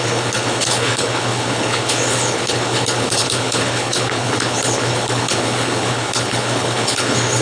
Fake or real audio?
fake